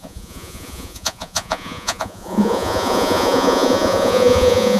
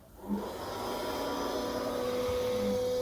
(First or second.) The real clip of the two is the second